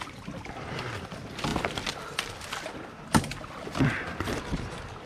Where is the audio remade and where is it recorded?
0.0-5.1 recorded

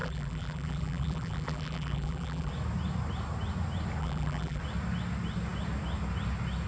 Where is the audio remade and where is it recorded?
0.0-2.5 remade; 2.5-4.0 recorded; 4.0-4.6 remade; 4.6-6.7 recorded

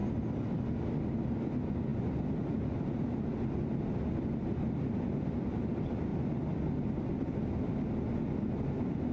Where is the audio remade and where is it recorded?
0.0-0.6 remade; 0.6-6.1 recorded; 6.1-7.2 remade; 7.2-9.1 recorded

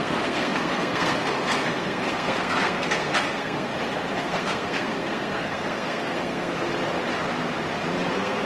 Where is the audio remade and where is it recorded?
0.0-3.7 remade; 3.7-4.2 recorded; 4.2-6.7 remade; 6.7-8.1 recorded; 8.1-8.5 remade

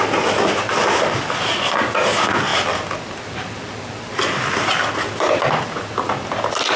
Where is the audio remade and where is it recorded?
0.0-6.8 recorded

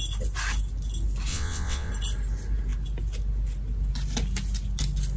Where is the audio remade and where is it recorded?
0.0-1.3 recorded; 1.3-1.9 remade; 1.9-5.2 recorded

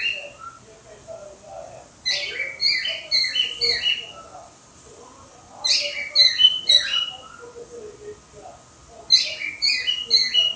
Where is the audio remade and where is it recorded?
0.0-2.6 recorded; 2.6-4.9 remade; 4.9-10.6 recorded